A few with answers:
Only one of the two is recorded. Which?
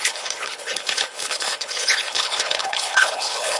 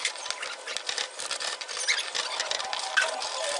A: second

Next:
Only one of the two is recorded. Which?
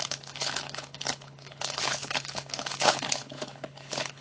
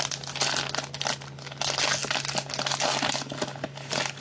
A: second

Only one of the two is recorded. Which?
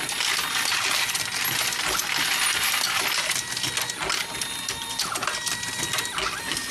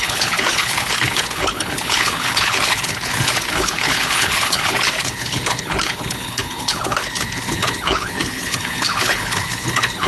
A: first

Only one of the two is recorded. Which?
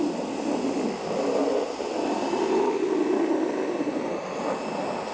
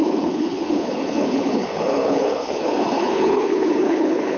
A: first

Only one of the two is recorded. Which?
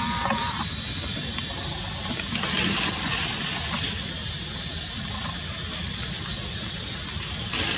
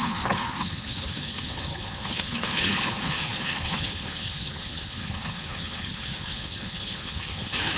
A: first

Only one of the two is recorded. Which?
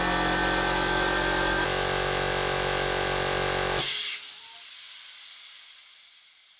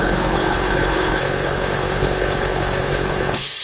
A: first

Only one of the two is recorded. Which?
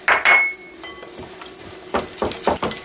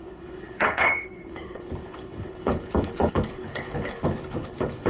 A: first